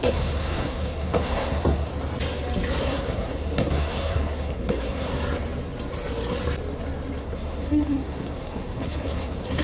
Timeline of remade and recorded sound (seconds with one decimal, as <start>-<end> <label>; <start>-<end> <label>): 0.0-1.9 remade; 1.9-2.8 recorded; 2.8-5.1 remade; 5.1-7.2 recorded; 7.2-9.6 remade